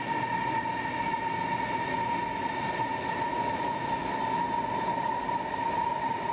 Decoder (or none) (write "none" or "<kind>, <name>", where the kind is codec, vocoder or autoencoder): none